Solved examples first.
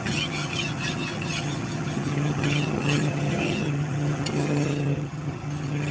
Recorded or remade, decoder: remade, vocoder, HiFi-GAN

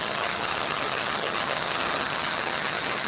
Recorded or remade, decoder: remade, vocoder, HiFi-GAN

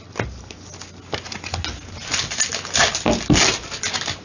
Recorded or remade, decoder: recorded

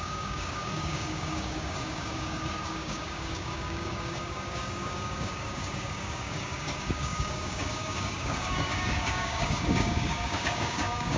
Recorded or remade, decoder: remade, codec, DAC